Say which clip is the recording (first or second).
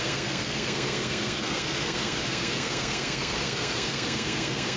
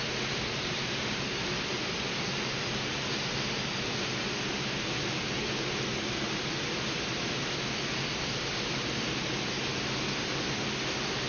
second